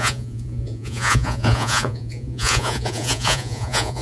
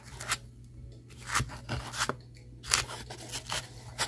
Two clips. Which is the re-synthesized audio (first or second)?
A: first